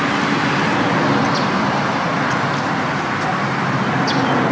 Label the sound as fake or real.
real